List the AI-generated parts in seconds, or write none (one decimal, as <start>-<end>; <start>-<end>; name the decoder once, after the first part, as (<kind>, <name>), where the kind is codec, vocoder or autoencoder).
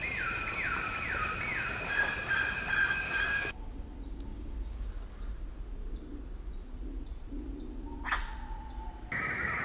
2.8-3.8 (codec, DAC); 4.3-4.9